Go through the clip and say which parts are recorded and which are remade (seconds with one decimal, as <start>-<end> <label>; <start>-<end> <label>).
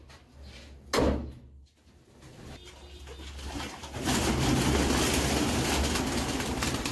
0.0-6.9 recorded